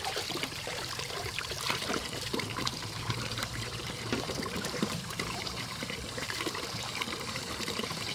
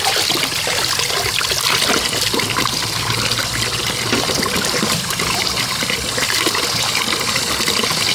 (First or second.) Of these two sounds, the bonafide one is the second